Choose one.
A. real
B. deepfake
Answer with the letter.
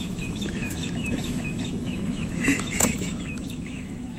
B